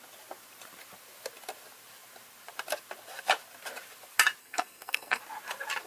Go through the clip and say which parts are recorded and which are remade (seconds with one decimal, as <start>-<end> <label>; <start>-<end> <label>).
0.0-4.4 recorded; 4.4-5.2 remade; 5.2-5.9 recorded